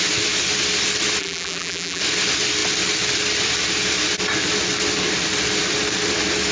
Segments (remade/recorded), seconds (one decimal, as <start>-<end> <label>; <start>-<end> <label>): 0.0-1.2 recorded; 1.2-2.0 remade; 2.0-6.5 recorded